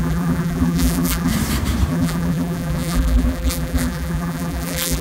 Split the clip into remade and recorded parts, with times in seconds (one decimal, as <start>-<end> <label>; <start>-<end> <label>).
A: 0.0-1.3 remade; 1.3-1.9 recorded; 1.9-5.0 remade